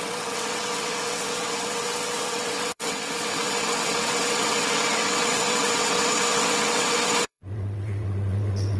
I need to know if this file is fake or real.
fake